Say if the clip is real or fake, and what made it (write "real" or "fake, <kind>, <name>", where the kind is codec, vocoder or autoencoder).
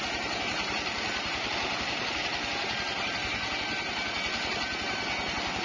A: real